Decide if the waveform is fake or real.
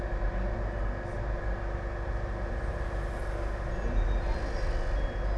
real